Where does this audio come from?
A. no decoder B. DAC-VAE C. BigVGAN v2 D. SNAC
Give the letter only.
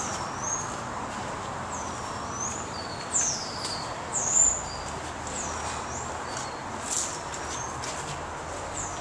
A